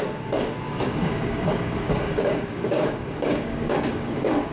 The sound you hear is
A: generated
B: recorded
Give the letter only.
A